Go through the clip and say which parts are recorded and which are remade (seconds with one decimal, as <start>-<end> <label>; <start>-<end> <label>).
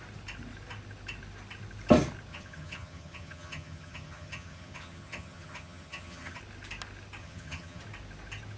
0.0-2.3 recorded; 2.3-6.4 remade; 6.4-7.2 recorded; 7.2-7.8 remade; 7.8-8.6 recorded